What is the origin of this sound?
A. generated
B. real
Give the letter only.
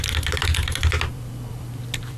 A